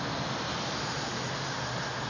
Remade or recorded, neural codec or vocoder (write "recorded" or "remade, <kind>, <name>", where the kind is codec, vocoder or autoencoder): recorded